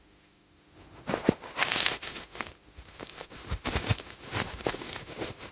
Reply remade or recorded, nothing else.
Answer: remade